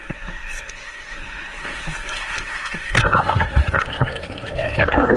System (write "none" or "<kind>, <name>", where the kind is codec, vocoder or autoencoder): codec, SNAC